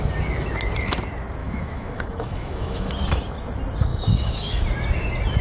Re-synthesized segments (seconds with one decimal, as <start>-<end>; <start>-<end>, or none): 1.4-2.9; 3.9-4.6